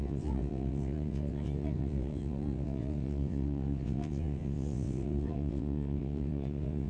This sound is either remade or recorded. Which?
remade